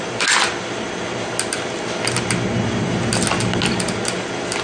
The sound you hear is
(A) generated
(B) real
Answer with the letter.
B